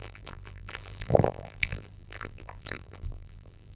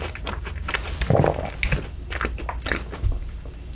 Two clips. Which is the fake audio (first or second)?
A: first